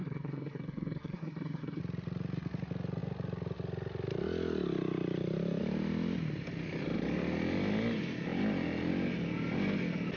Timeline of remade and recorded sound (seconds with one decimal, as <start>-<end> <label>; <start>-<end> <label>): 0.0-1.8 remade; 1.8-10.2 recorded